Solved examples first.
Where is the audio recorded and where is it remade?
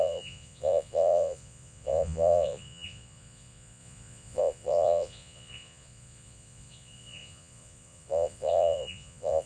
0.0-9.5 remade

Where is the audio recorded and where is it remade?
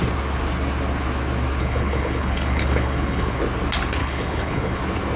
0.0-1.6 recorded; 1.6-3.4 remade; 3.4-4.0 recorded; 4.0-4.8 remade; 4.8-5.2 recorded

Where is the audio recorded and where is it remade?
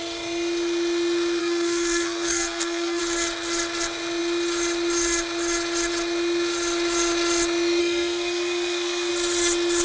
0.0-1.4 recorded; 1.4-3.0 remade; 3.0-7.8 recorded; 7.8-9.1 remade; 9.1-9.8 recorded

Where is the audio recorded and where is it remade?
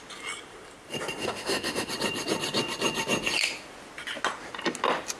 0.0-1.2 recorded; 1.2-1.9 remade; 1.9-5.2 recorded